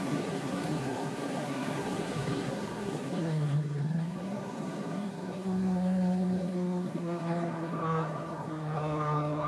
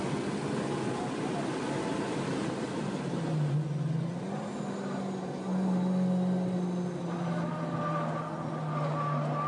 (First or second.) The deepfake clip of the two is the first